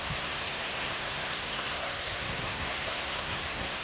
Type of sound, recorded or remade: remade